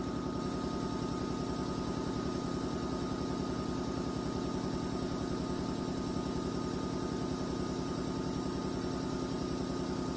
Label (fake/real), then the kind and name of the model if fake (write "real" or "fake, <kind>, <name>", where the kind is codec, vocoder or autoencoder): real